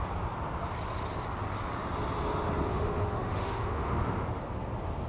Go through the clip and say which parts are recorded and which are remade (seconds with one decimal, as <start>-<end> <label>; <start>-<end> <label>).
0.0-2.7 recorded; 2.7-4.4 remade; 4.4-5.1 recorded